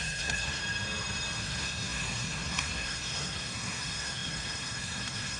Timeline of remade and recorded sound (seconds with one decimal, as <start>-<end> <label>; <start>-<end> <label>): 0.0-0.6 remade; 0.6-1.4 recorded; 1.4-5.4 remade